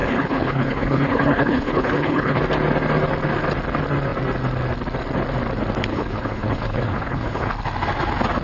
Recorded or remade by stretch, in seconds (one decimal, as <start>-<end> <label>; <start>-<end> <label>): 0.0-2.4 remade; 2.4-5.9 recorded; 5.9-7.5 remade; 7.5-8.4 recorded